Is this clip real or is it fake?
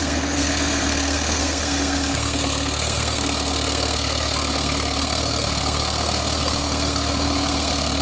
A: fake